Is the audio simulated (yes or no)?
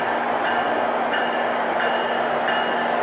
no